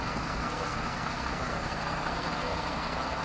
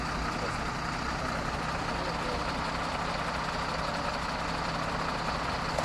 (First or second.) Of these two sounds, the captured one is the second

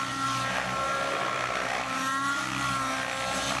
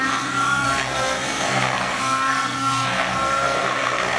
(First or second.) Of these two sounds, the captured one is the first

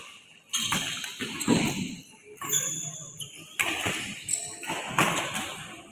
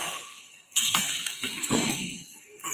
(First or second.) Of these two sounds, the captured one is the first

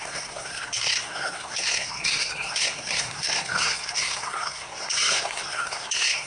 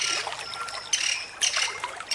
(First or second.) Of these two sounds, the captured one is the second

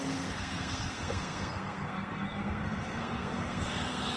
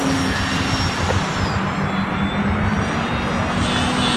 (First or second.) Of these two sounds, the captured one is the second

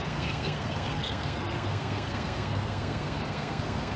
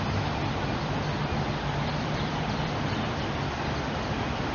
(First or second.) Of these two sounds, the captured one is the second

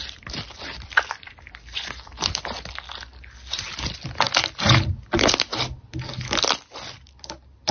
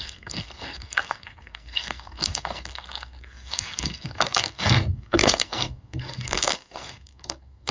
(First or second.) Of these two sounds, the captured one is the first